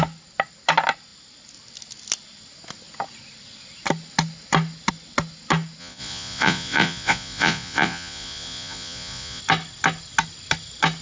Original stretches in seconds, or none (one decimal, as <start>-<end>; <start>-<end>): 0.0-5.8; 9.4-11.0